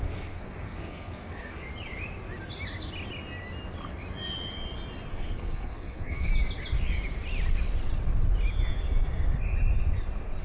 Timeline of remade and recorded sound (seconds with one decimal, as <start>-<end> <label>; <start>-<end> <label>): 0.0-1.7 remade; 1.7-5.1 recorded; 5.1-6.3 remade; 6.3-10.4 recorded